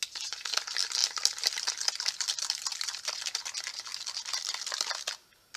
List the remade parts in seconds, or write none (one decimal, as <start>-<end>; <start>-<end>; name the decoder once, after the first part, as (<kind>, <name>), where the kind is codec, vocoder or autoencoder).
1.0-1.7 (vocoder, BigVGAN v2); 2.6-3.5; 3.9-4.5

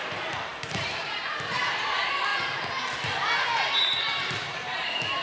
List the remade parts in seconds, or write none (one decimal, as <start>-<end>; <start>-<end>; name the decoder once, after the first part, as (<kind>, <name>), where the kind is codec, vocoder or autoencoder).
0.0-2.3 (vocoder, BigVGAN v2); 4.0-5.2

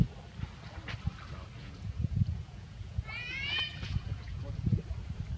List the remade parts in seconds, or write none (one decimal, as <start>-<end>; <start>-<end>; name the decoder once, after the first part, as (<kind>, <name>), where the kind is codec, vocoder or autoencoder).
1.6-4.8 (vocoder, Vocos)

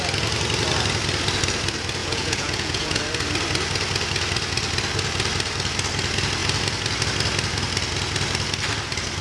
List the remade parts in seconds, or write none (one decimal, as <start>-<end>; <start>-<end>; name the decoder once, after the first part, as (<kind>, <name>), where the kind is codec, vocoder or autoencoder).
2.0-3.0 (vocoder, Vocos)

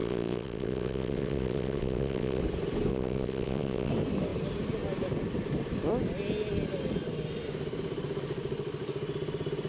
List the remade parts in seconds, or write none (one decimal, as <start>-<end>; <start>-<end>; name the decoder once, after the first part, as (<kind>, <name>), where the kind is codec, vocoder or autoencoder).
0.0-2.4 (vocoder, WaveNeXt); 2.9-3.9